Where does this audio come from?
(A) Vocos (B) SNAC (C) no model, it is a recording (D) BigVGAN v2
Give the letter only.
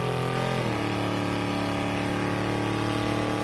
C